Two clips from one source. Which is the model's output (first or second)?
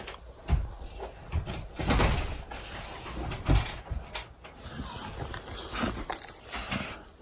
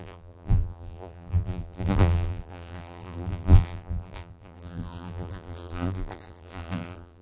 second